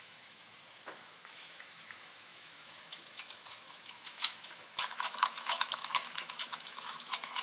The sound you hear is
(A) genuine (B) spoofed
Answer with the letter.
B